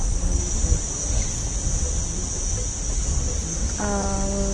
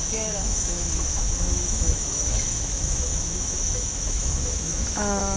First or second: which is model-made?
second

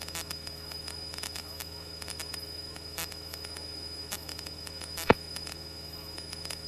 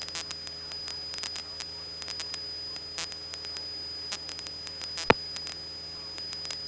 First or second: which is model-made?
first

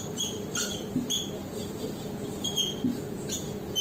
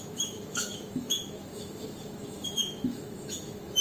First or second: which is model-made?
second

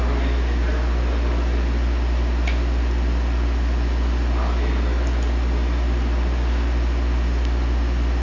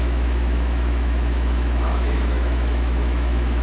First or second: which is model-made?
second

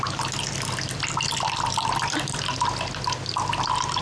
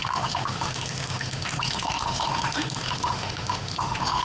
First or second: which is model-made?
second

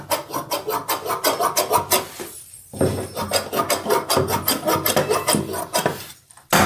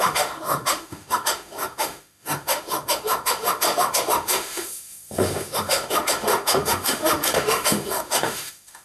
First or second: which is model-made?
second